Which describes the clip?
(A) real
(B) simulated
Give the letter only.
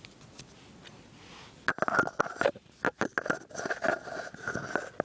A